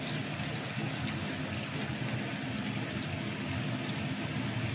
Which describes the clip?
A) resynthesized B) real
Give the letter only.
B